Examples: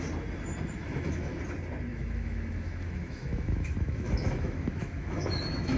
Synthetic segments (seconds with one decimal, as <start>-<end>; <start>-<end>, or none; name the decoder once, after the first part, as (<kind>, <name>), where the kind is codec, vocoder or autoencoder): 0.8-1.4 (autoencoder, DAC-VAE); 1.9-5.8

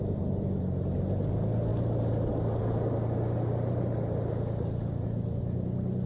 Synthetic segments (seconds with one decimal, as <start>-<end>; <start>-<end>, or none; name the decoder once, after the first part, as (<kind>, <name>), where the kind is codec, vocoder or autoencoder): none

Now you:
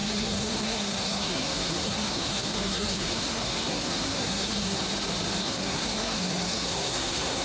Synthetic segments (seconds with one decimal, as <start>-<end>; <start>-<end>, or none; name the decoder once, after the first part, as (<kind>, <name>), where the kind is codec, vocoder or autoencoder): 0.0-4.8 (codec, SNAC); 5.4-7.4

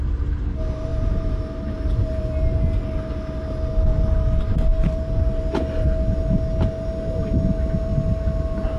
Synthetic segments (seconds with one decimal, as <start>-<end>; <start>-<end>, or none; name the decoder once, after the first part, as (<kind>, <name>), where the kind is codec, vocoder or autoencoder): 0.9-2.2 (vocoder, BigVGAN v2)

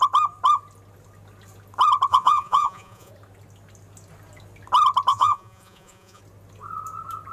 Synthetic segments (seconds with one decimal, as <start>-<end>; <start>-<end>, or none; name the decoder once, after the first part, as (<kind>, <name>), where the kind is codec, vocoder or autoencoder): 2.1-3.1 (vocoder, Vocos); 5.1-6.2